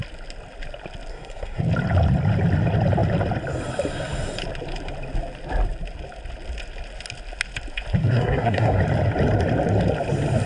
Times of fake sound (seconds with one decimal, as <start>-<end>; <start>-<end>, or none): 1.1-1.6; 8.0-8.8